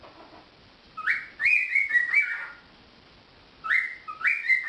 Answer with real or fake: real